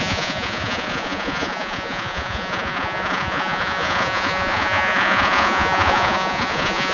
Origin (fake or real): fake